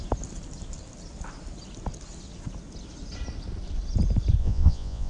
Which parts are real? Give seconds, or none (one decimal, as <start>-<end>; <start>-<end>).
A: 0.0-4.4